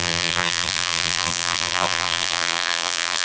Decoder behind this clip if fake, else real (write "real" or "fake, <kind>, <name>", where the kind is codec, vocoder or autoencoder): fake, vocoder, BigVGAN v2